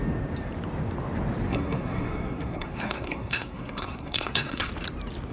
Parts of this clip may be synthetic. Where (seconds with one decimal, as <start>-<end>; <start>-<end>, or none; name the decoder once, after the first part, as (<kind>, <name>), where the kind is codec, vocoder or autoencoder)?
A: 1.5-4.7 (codec, SNAC)